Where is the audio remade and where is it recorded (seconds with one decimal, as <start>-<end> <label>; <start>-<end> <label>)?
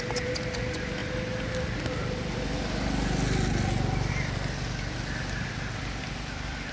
0.0-6.7 recorded